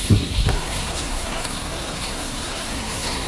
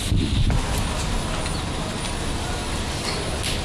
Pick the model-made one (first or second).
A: first